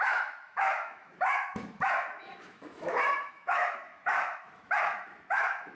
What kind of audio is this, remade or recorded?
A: remade